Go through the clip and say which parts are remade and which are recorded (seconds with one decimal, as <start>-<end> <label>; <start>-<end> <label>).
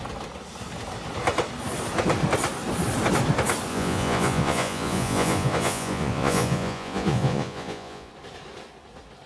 0.0-3.7 recorded; 3.7-8.1 remade; 8.1-9.3 recorded